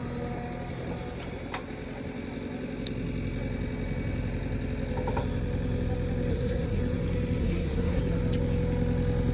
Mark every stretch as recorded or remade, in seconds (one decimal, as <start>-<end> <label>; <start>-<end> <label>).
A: 0.0-6.3 recorded; 6.3-6.8 remade; 6.8-7.4 recorded; 7.4-8.0 remade; 8.0-9.3 recorded